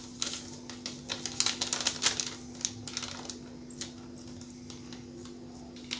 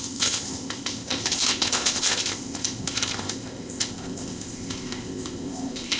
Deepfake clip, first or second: second